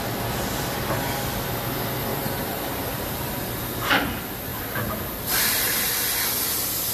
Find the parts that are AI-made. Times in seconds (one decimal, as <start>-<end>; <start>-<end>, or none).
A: 2.1-3.6; 4.5-5.8